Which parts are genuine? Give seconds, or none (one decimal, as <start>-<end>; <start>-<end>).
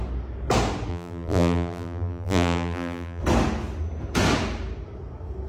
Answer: 0.0-0.9; 3.2-5.5